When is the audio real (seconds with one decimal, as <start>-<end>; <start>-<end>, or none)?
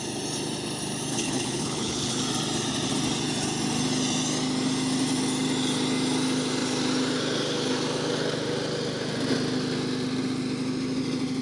0.0-1.1; 2.2-11.4